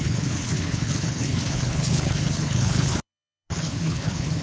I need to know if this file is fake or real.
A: fake